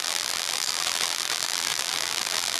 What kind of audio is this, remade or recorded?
remade